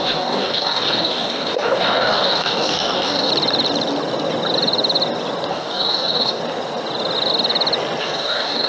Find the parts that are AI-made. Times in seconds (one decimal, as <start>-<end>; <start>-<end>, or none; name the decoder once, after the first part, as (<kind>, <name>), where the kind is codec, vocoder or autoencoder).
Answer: 0.0-3.3 (codec, DAC); 5.5-6.4; 8.0-8.7